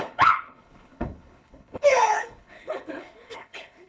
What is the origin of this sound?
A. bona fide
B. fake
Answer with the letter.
B